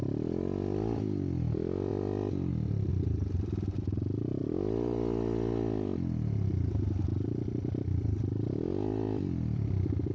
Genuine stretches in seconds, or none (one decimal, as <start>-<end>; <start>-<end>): 0.0-1.9; 2.5-4.4; 5.5-7.1